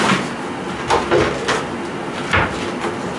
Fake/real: real